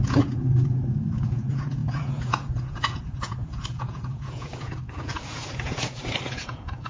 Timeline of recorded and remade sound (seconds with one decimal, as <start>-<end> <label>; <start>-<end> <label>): 0.0-6.9 remade